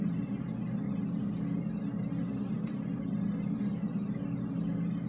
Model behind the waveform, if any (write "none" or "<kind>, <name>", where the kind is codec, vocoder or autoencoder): none